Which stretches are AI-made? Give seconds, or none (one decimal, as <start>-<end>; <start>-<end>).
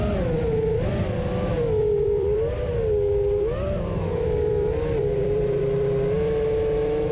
1.8-2.5; 4.1-5.6